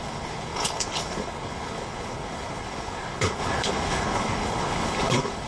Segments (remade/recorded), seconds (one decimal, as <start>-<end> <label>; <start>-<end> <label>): 0.0-5.5 remade